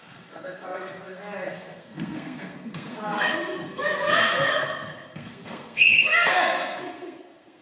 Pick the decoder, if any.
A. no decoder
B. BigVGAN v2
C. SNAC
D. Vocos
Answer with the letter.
C